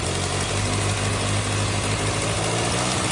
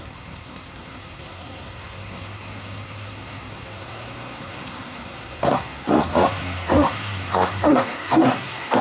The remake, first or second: second